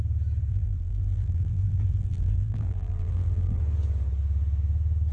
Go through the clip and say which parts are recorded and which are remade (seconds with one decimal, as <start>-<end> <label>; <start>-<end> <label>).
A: 0.0-0.5 recorded; 0.5-3.6 remade; 3.6-5.1 recorded